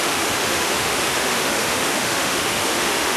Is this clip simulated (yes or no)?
yes